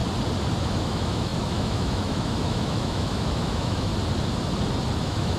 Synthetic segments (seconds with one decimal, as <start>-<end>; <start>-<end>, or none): 0.6-3.9; 5.0-5.4